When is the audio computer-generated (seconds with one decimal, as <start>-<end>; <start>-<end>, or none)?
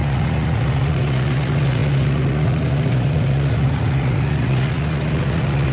0.0-5.7